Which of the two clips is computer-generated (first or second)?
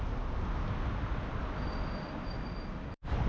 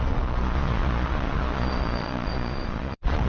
second